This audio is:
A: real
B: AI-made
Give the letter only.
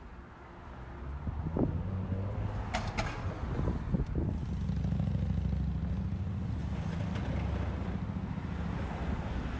A